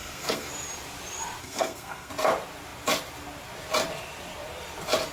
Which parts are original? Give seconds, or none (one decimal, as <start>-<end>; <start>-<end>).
0.5-1.4; 2.1-5.1